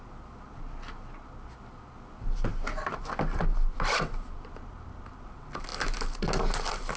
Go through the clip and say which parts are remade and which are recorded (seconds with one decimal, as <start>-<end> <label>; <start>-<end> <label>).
0.0-7.0 recorded